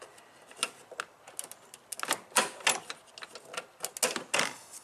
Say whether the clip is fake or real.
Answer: real